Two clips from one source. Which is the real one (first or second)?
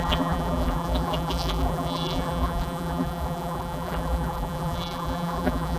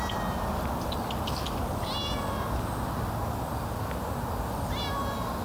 second